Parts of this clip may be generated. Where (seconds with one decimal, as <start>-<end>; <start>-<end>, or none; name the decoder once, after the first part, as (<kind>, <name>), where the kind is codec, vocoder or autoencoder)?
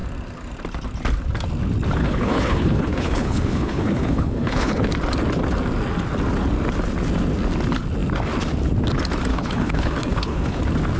2.0-4.9 (codec, HILCodec); 9.3-10.6